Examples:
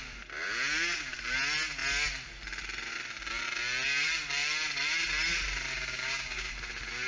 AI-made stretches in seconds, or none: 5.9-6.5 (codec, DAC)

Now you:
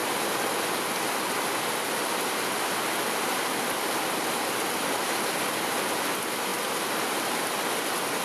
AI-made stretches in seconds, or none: none

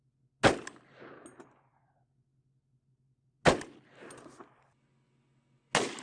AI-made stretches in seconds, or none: none

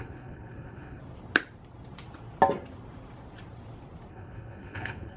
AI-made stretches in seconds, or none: 0.0-1.0 (codec, HILCodec); 4.1-5.2

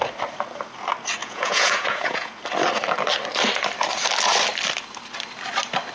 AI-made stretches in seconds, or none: 1.2-2.4 (vocoder, Vocos)

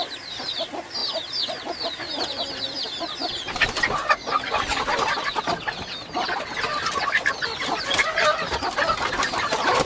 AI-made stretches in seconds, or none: none